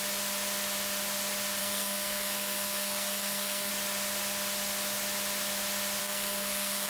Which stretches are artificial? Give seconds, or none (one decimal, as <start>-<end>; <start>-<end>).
1.6-3.7; 6.0-6.9